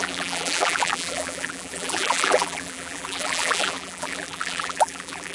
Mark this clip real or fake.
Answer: fake